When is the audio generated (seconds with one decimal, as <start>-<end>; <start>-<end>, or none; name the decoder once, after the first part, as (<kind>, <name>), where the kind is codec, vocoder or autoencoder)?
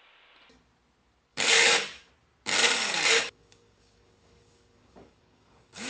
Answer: 1.3-2.1 (codec, DAC); 2.6-5.9